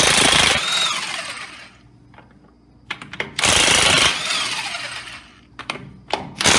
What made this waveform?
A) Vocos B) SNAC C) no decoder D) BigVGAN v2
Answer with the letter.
C